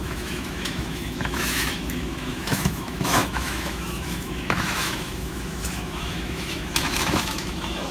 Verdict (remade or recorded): remade